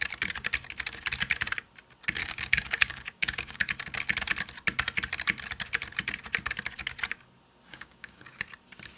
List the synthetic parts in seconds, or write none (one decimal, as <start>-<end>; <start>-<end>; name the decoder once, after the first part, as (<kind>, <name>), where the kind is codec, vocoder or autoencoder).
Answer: 2.2-3.7 (codec, DAC); 7.7-8.4